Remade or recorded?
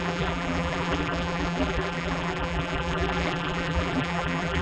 remade